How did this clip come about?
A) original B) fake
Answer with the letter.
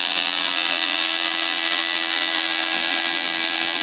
B